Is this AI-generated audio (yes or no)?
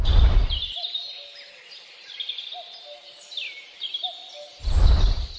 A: no